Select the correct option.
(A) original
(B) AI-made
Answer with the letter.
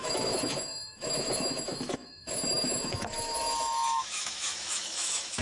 B